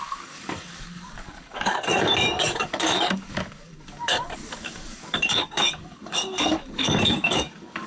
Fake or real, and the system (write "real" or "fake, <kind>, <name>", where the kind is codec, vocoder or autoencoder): fake, codec, DAC